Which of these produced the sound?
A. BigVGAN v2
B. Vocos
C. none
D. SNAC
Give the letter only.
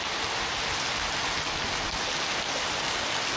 C